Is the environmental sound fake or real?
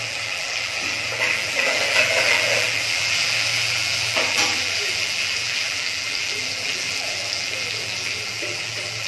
fake